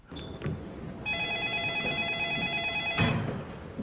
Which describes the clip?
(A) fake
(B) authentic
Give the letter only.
B